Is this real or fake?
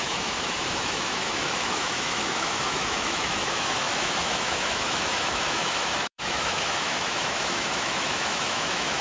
fake